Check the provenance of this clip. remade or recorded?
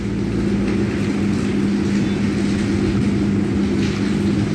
recorded